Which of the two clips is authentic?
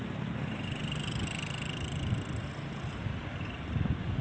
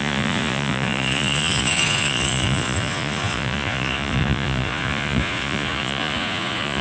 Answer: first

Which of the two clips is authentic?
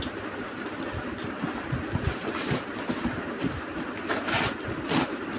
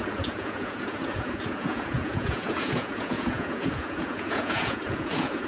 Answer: first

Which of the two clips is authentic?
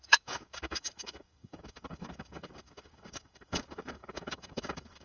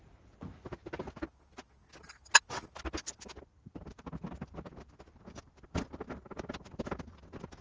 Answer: second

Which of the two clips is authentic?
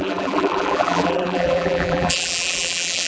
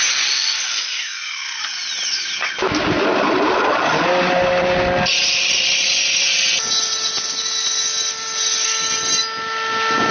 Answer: second